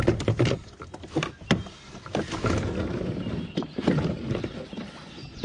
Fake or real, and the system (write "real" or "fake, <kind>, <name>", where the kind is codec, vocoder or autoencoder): real